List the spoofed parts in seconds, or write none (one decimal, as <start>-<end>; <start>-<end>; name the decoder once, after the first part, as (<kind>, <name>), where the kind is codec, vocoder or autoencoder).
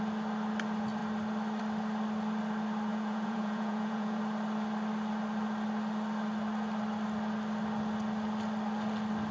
2.9-4.2 (vocoder, Vocos)